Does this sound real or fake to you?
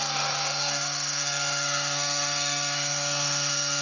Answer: fake